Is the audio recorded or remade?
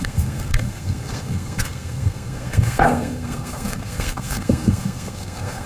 remade